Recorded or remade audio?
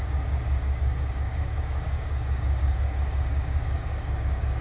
remade